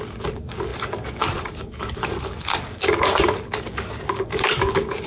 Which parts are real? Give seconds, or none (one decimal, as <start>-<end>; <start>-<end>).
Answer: none